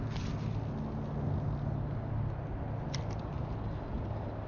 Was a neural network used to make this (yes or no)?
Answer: no